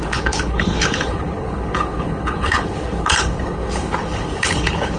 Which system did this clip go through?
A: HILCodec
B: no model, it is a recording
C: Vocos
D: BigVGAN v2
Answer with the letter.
A